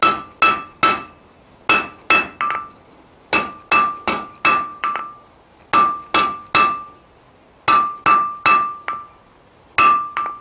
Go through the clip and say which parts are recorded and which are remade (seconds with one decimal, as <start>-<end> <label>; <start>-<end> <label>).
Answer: 0.0-4.7 recorded; 4.7-5.6 remade; 5.6-10.4 recorded